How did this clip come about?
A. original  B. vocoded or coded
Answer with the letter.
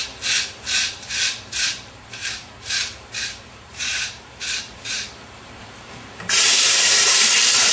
B